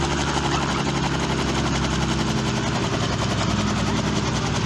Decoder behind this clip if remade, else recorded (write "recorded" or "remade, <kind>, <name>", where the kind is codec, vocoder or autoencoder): recorded